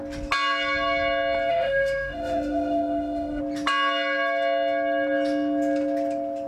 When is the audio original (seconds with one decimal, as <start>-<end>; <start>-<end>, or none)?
0.0-1.5; 3.4-6.5